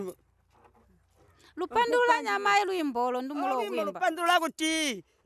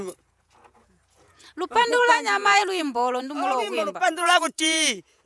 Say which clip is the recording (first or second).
first